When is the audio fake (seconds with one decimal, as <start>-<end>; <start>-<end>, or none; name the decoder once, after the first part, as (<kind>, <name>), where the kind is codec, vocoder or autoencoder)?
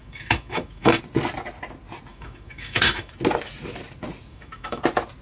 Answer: 0.0-1.0 (autoencoder, DAC-VAE); 2.1-3.1; 4.3-4.8